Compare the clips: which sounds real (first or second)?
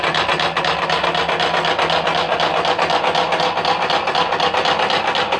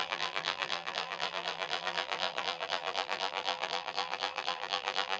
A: first